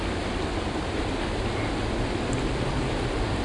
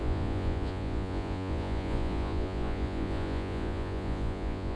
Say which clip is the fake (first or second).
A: second